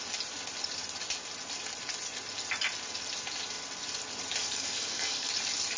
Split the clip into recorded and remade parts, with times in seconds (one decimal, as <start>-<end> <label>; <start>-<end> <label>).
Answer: 0.0-4.4 recorded; 4.4-5.3 remade; 5.3-5.8 recorded